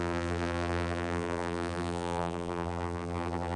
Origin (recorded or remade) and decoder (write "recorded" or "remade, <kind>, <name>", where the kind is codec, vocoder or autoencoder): remade, vocoder, BigVGAN v2